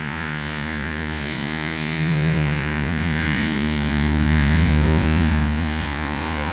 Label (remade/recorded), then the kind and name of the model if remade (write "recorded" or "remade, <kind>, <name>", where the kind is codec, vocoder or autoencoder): remade, vocoder, Vocos